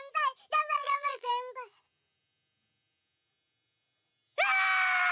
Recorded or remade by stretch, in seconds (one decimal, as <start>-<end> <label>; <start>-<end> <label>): 0.0-0.7 recorded; 0.7-1.3 remade; 1.3-5.1 recorded